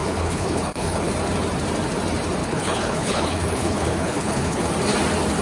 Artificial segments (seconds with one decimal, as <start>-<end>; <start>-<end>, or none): 0.0-1.1; 2.4-4.6